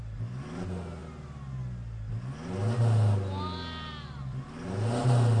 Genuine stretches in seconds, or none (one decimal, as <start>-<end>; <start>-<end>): 0.0-5.4